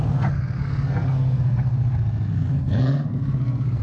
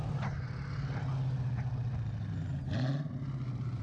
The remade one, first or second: first